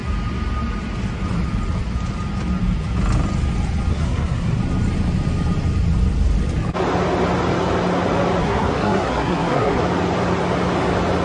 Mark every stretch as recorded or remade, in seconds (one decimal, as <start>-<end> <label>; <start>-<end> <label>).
0.0-3.9 recorded; 3.9-4.6 remade; 4.6-8.4 recorded; 8.4-9.8 remade; 9.8-11.2 recorded